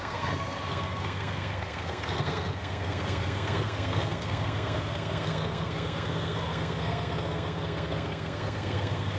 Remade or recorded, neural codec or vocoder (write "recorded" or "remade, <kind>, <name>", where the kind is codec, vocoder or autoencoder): remade, codec, SNAC